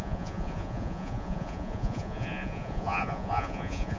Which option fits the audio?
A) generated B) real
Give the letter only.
A